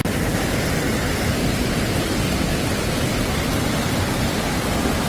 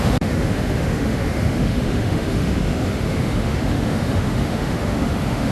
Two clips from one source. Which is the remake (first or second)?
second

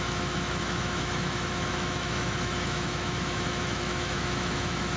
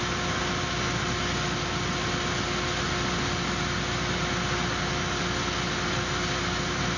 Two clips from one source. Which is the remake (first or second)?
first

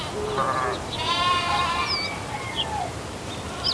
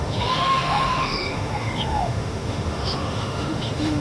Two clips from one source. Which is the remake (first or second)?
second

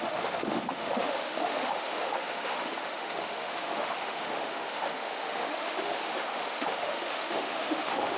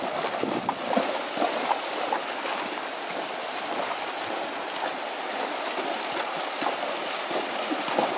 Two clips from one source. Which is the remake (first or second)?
first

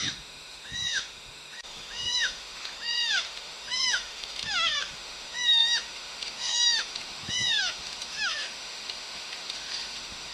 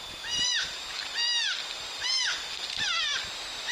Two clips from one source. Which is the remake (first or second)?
first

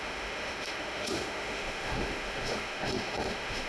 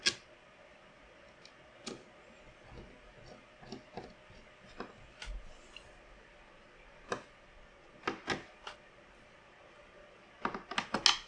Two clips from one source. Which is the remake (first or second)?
first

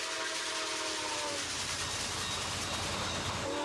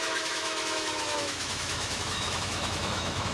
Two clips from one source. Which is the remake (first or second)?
second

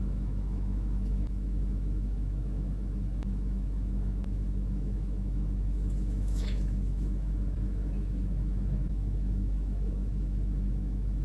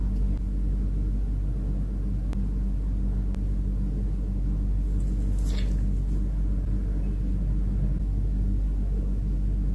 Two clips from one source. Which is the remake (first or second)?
first